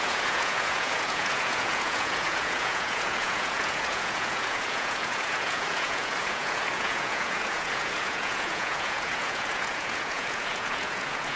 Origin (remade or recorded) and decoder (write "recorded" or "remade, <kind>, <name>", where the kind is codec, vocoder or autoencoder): remade, vocoder, Vocos